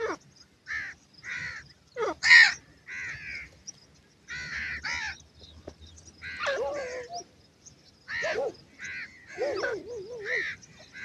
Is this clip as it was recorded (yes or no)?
yes